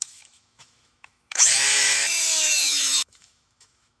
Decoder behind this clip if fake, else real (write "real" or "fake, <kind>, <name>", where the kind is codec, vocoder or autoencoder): fake, autoencoder, DAC-VAE